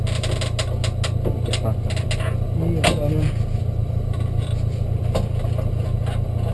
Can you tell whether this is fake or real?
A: real